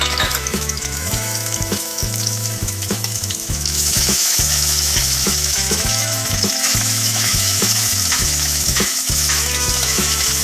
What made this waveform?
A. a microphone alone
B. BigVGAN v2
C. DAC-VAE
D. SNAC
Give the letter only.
C